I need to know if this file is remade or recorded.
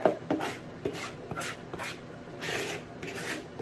recorded